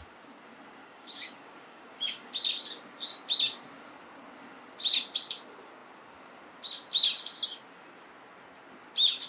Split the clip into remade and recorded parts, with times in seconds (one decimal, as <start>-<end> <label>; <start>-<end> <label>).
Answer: 0.0-0.8 recorded; 0.8-2.3 remade; 2.3-9.3 recorded